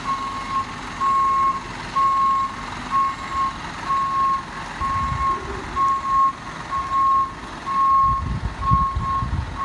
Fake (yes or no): no